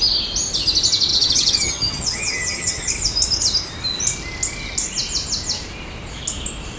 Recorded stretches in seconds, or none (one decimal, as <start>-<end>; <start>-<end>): 0.0-1.1; 2.9-6.8